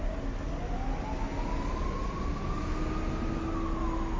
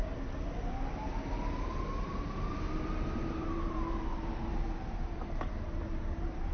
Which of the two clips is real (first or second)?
first